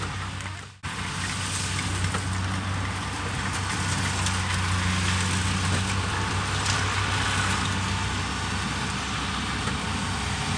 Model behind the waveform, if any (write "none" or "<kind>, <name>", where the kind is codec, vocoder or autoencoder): none